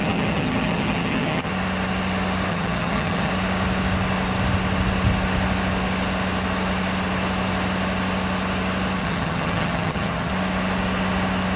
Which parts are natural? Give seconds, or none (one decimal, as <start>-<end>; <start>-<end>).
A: 1.5-2.5; 3.3-9.0; 10.3-11.6